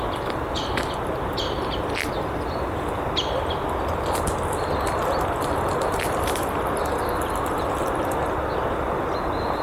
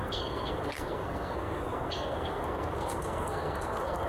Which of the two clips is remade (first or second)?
second